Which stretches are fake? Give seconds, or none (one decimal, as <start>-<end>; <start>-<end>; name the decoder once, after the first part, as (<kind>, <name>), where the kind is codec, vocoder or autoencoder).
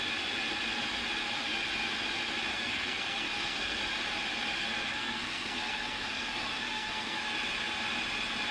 2.5-3.8 (codec, SNAC); 4.6-7.2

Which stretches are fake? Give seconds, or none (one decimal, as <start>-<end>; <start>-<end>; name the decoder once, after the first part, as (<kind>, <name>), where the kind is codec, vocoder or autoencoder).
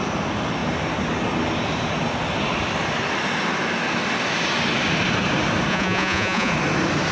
5.7-6.5 (vocoder, Vocos)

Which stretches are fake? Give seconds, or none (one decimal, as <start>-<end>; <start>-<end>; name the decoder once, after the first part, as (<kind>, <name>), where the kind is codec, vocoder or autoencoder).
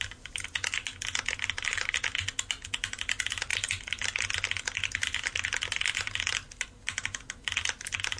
none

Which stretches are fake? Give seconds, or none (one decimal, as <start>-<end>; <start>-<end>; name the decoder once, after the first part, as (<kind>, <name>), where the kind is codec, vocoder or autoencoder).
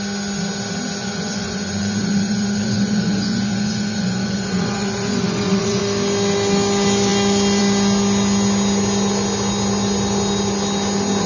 1.0-5.8 (vocoder, Vocos)